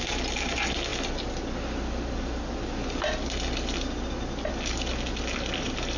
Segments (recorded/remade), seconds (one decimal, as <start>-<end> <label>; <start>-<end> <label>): 0.0-6.0 recorded